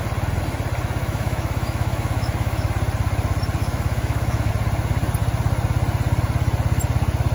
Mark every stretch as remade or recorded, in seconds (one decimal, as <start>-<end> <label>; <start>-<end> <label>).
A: 0.0-1.0 recorded; 1.0-2.7 remade; 2.7-3.6 recorded; 3.6-4.5 remade; 4.5-7.3 recorded